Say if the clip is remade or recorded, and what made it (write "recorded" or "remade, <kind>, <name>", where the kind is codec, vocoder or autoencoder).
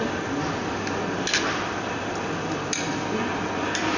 recorded